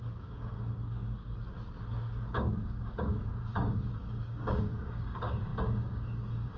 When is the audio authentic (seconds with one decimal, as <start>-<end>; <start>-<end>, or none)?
1.2-2.3